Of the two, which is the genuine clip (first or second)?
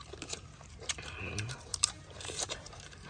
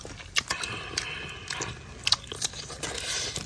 second